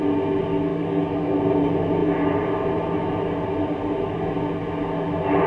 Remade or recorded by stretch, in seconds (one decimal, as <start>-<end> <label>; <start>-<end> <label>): 0.0-0.7 recorded; 0.7-1.4 remade; 1.4-5.5 recorded